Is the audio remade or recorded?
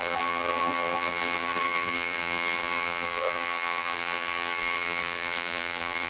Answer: remade